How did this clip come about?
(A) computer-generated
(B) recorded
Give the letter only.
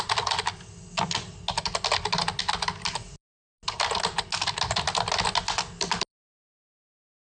B